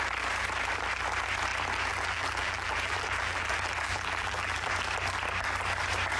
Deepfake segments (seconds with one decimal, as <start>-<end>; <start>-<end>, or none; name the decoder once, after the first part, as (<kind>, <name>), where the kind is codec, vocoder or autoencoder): 1.9-4.7 (vocoder, BigVGAN v2)